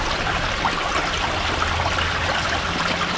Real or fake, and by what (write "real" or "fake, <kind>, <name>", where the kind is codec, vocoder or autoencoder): real